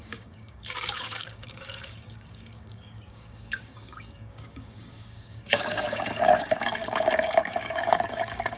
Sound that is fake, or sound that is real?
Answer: fake